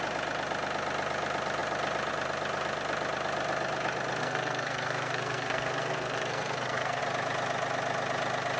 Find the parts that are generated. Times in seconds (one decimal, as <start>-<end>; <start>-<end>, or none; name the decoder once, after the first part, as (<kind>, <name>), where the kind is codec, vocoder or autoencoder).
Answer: 4.2-7.0 (codec, SNAC)